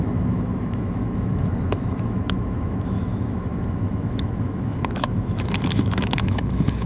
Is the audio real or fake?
fake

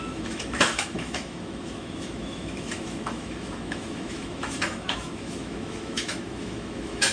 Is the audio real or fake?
fake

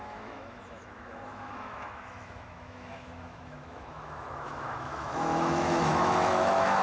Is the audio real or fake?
fake